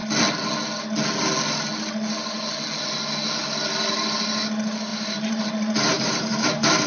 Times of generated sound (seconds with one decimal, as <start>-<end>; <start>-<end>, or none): 4.9-6.9